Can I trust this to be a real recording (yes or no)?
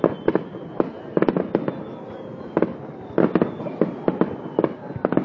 yes